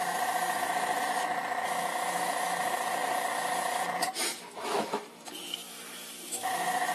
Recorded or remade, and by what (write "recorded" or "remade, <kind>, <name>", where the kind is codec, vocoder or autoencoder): remade, autoencoder, DAC-VAE